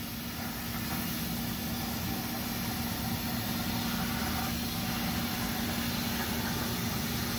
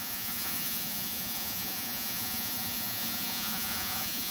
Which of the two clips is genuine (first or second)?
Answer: first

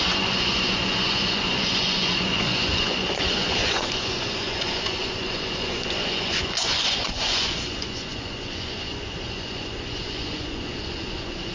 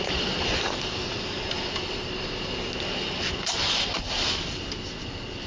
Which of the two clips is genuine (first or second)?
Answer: second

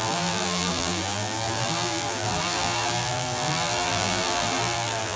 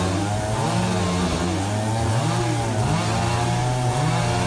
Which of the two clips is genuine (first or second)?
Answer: second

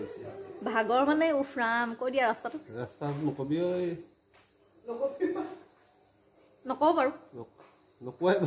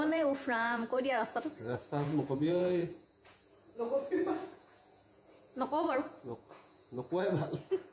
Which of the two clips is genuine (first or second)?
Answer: first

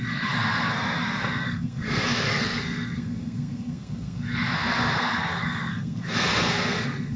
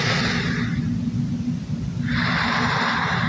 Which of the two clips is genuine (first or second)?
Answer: second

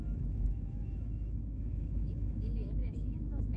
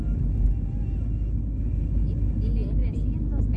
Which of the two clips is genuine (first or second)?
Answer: second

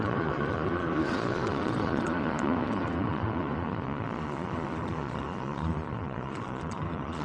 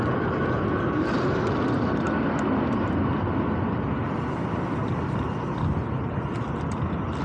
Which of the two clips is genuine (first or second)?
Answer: second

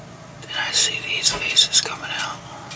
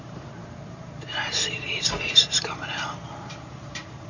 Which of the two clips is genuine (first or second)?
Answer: first